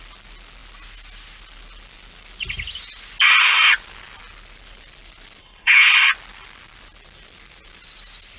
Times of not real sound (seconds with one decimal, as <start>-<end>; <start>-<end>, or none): 5.4-5.9